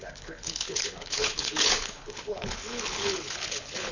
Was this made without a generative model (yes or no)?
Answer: no